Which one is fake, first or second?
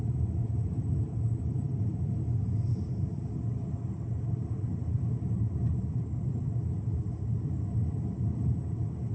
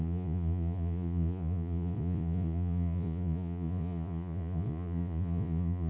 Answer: second